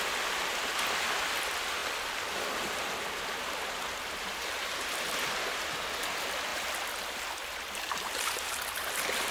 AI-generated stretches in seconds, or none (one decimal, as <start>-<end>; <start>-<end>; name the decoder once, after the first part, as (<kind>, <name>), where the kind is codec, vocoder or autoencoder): 1.8-3.4 (vocoder, BigVGAN v2); 6.5-7.2

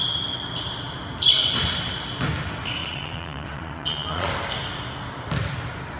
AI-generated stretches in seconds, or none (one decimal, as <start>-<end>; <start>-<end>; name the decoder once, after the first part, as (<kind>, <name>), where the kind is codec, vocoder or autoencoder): 2.8-4.3 (vocoder, Vocos)

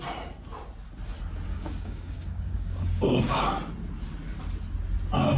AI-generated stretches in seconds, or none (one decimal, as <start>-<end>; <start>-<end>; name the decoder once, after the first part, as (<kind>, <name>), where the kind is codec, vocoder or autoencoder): 1.5-3.5 (codec, DAC)

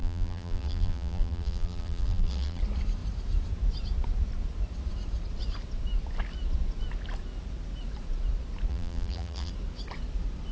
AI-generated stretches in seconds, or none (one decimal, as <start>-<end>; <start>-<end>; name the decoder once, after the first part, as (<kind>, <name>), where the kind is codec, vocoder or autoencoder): 0.0-2.6 (vocoder, BigVGAN v2); 8.7-9.5

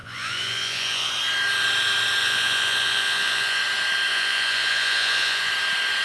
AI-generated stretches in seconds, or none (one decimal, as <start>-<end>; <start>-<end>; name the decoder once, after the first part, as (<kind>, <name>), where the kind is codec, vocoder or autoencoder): 0.0-1.1 (vocoder, Vocos); 2.2-3.6; 4.1-5.5

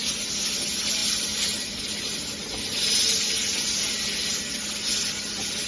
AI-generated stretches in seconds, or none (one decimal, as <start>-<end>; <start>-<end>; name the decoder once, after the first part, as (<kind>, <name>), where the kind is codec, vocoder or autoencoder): none

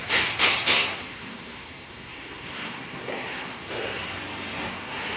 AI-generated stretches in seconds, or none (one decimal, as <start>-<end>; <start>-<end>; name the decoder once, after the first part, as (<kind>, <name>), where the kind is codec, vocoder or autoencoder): 0.0-4.2 (codec, SNAC); 4.7-5.2